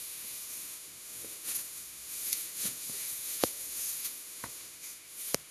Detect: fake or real fake